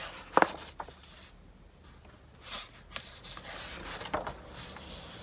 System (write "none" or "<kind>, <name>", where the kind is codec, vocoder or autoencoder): none